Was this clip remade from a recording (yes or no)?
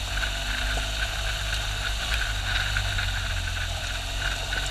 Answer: no